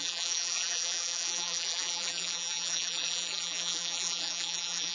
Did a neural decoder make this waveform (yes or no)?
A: yes